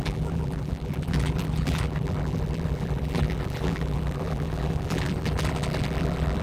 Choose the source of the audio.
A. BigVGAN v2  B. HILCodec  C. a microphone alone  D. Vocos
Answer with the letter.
A